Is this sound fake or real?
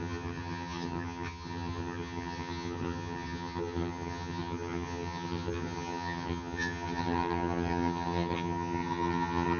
fake